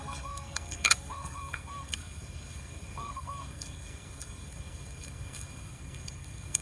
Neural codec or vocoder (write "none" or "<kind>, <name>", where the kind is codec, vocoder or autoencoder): codec, SNAC